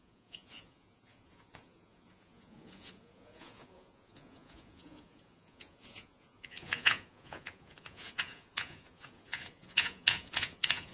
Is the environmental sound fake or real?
fake